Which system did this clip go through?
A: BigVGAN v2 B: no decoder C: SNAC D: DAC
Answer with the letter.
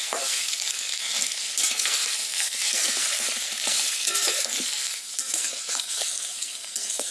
C